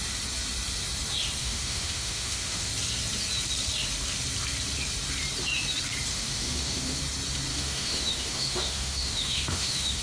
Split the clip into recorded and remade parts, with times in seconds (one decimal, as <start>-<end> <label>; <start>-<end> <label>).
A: 0.0-1.4 recorded; 1.4-2.7 remade; 2.7-6.1 recorded; 6.1-7.0 remade; 7.0-7.5 recorded; 7.5-10.0 remade